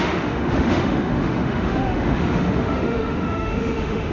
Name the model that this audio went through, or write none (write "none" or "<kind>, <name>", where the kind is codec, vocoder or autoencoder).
autoencoder, DAC-VAE